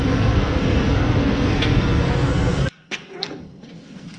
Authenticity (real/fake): fake